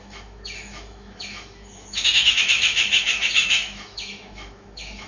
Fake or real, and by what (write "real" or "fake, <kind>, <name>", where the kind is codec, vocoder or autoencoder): fake, autoencoder, DAC-VAE